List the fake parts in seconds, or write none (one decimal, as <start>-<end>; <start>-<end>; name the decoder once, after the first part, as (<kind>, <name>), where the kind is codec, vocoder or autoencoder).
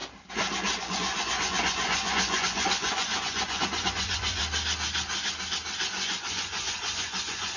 0.8-4.4 (vocoder, Vocos); 5.9-7.6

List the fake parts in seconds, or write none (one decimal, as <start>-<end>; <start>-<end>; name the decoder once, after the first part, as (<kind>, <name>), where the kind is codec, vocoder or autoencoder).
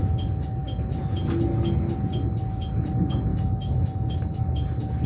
3.3-4.4 (autoencoder, DAC-VAE)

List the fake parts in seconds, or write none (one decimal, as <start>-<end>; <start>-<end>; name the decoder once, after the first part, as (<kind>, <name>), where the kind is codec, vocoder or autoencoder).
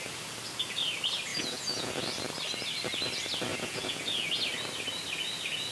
1.3-1.9 (vocoder, Vocos); 3.5-4.3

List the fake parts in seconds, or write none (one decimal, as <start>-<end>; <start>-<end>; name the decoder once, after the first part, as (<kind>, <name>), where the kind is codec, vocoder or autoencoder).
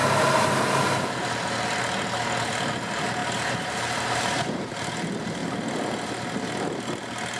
3.2-4.9 (vocoder, BigVGAN v2)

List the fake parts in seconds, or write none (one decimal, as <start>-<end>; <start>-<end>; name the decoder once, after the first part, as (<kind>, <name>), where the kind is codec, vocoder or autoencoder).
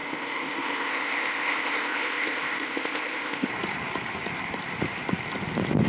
0.0-3.5 (codec, ZipCodec)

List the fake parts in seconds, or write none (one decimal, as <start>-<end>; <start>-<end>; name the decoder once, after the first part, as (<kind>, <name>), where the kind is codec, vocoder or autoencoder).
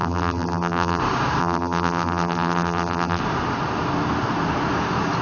0.0-1.0 (vocoder, BigVGAN v2); 1.4-3.2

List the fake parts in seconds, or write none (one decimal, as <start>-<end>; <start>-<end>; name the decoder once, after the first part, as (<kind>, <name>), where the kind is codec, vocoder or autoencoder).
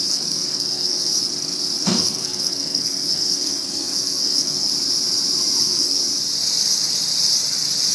0.0-1.1 (codec, SNAC); 1.8-4.7; 5.6-6.0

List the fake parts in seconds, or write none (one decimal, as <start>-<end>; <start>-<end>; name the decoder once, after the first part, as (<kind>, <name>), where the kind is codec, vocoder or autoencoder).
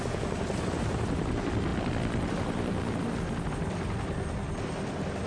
none